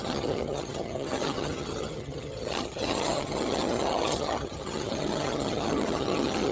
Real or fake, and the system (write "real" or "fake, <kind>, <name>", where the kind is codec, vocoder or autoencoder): fake, vocoder, HiFi-GAN